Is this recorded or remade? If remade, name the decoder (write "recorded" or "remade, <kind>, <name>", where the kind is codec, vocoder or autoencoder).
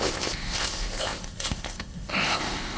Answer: remade, codec, ZipCodec